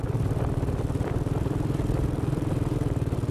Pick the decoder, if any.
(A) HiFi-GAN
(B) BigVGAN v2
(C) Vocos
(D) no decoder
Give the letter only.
B